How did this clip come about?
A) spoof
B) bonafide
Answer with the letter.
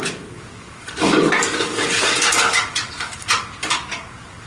A